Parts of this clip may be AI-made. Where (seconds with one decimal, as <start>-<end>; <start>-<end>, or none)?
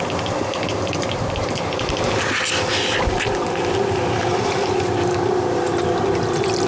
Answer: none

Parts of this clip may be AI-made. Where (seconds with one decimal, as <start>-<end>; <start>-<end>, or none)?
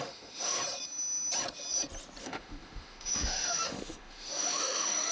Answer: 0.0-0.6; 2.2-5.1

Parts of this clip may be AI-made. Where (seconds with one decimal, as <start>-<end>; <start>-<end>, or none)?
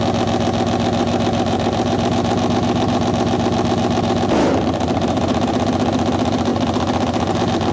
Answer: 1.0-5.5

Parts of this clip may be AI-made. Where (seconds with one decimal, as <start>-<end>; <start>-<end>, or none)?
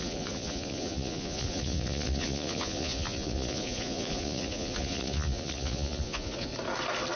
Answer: 0.0-6.5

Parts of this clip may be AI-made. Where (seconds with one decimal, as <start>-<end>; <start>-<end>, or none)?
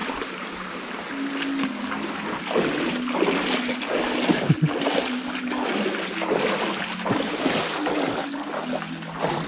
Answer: none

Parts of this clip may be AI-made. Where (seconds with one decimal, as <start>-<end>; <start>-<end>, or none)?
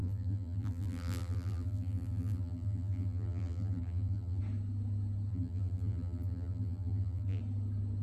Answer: 0.0-4.4; 5.3-7.4